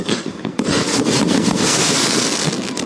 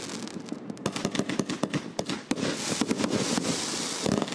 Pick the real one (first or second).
second